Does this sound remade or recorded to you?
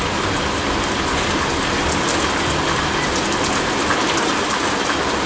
recorded